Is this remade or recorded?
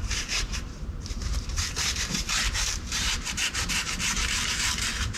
remade